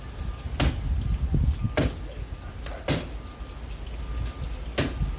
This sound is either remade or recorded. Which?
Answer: recorded